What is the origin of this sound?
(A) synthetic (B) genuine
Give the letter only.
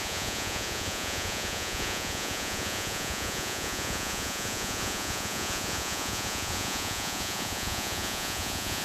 A